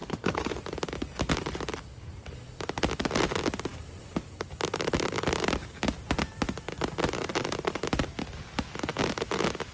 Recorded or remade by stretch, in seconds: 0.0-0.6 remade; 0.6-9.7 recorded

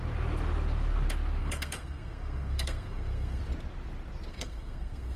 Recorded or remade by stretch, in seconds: 0.0-1.4 recorded; 1.4-3.4 remade; 3.4-4.3 recorded; 4.3-5.2 remade

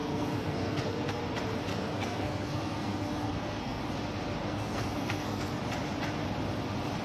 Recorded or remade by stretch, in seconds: 0.0-1.2 remade; 1.2-1.7 recorded; 1.7-3.8 remade; 3.8-4.4 recorded; 4.4-5.6 remade; 5.6-7.0 recorded

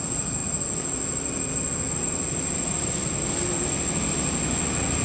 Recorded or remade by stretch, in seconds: 0.0-5.0 recorded

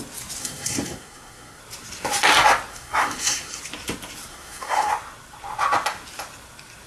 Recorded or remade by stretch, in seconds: 0.0-0.4 recorded; 0.4-1.6 remade; 1.6-2.7 recorded; 2.7-3.6 remade; 3.6-4.3 recorded; 4.3-4.9 remade; 4.9-6.9 recorded

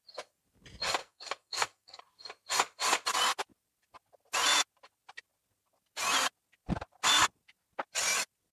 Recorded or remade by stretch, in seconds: 0.0-1.0 recorded; 1.0-2.0 remade; 2.0-8.5 recorded

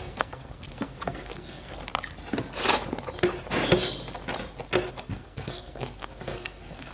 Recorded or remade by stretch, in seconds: 0.0-1.8 remade; 1.8-4.9 recorded; 4.9-6.9 remade

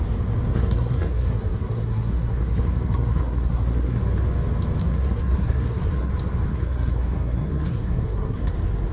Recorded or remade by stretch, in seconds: 0.0-0.5 recorded; 0.5-4.0 remade; 4.0-4.8 recorded; 4.8-6.1 remade; 6.1-6.5 recorded; 6.5-8.5 remade; 8.5-8.9 recorded